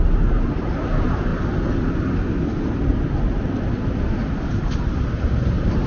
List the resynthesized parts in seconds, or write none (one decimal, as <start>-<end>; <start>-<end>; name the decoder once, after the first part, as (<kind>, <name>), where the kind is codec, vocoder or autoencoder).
0.0-1.3 (vocoder, BigVGAN v2); 4.5-5.9